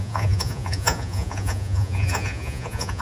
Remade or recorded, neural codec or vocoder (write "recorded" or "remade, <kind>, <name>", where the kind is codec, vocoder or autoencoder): remade, vocoder, Vocos